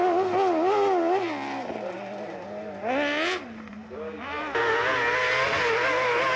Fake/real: real